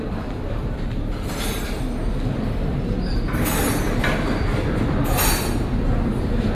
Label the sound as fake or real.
fake